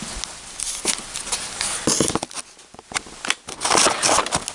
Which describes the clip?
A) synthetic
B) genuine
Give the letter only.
B